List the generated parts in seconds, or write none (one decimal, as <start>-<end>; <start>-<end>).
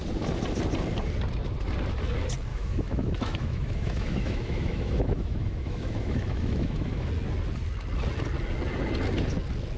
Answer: 2.5-7.1